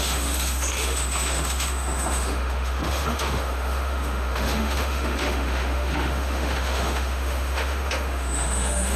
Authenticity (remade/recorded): remade